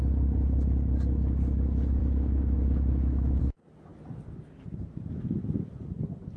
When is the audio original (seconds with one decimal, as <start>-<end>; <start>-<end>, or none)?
0.0-2.0; 3.4-6.4